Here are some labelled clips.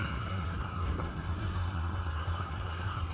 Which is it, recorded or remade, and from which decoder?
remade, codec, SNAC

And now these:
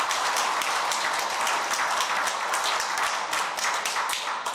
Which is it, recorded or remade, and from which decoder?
recorded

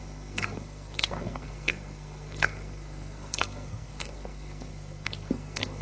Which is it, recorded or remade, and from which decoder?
remade, codec, SNAC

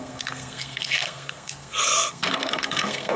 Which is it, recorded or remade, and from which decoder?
remade, codec, SNAC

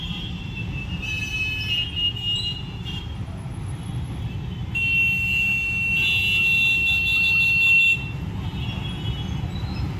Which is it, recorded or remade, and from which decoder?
recorded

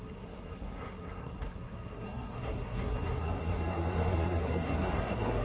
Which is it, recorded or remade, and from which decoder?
remade, codec, SNAC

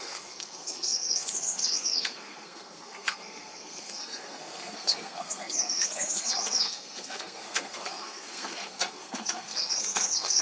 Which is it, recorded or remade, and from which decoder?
remade, codec, SNAC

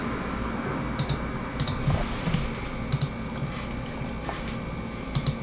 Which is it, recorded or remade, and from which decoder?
recorded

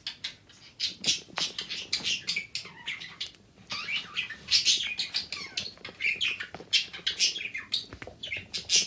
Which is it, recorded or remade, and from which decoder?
recorded